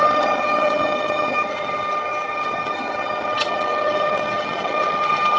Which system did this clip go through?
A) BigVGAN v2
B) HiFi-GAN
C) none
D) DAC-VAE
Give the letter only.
B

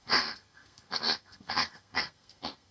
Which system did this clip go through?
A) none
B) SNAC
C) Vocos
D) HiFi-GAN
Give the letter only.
B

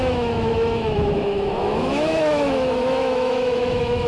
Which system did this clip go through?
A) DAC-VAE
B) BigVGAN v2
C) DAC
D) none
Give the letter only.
A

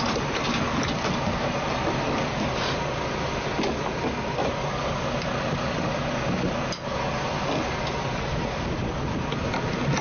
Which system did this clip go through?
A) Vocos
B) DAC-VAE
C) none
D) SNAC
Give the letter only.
C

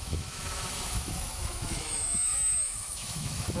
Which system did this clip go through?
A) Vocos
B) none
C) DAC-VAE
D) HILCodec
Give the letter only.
C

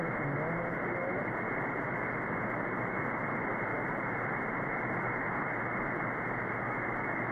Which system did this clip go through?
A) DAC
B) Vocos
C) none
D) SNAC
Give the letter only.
C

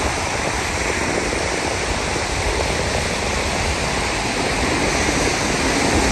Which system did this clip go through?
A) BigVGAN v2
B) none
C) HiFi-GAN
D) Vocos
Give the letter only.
B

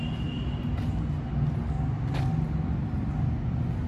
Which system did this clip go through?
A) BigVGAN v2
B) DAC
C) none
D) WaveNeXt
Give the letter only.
C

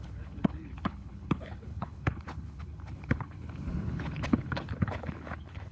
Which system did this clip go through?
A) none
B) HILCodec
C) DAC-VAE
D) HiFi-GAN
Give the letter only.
B